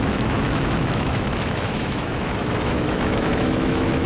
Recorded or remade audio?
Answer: remade